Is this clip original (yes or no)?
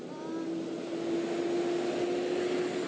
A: yes